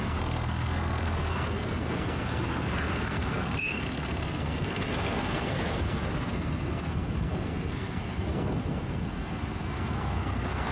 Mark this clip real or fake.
fake